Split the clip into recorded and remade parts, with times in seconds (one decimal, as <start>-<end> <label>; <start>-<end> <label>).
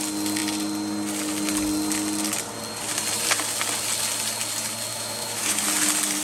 0.0-4.9 recorded; 4.9-5.6 remade; 5.6-6.2 recorded